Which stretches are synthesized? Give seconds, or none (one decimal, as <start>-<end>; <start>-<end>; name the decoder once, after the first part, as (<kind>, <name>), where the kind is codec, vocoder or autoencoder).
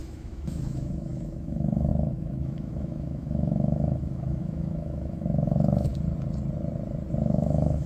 0.0-5.9 (autoencoder, DAC-VAE); 7.2-7.9